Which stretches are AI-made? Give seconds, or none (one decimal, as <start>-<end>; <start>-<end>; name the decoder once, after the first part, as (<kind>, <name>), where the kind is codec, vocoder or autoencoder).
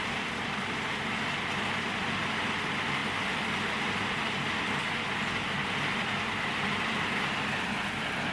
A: none